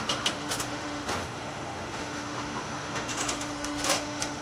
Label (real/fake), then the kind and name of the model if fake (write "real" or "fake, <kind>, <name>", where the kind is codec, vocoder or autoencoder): fake, autoencoder, DAC-VAE